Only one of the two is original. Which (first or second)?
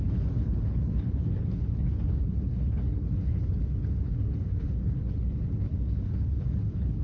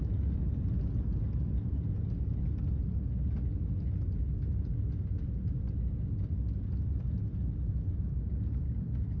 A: second